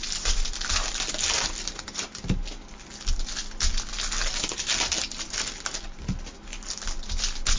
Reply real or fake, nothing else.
real